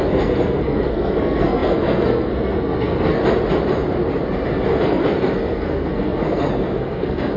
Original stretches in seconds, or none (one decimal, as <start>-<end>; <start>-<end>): 3.2-4.8